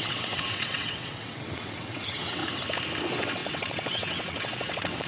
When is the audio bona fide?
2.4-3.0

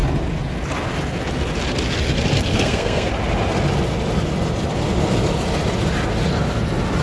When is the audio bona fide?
0.0-2.5; 3.1-7.0